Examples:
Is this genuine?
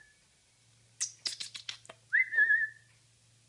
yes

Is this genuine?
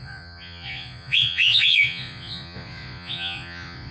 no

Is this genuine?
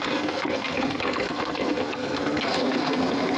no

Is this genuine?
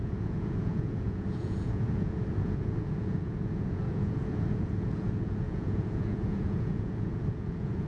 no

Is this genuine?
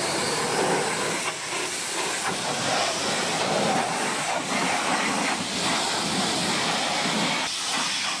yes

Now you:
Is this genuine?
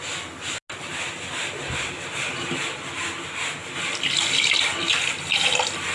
yes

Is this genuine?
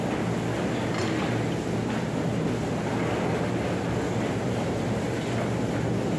yes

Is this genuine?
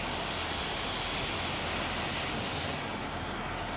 yes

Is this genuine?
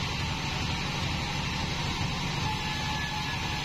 yes